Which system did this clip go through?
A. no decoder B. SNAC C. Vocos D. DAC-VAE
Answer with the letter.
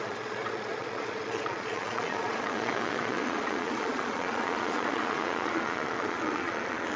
C